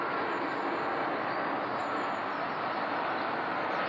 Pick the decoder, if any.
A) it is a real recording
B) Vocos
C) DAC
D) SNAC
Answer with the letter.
A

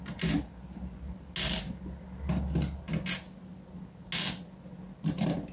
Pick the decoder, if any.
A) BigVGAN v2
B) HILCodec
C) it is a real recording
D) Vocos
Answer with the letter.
C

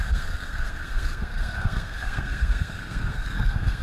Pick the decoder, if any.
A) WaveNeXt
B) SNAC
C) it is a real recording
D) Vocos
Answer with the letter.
B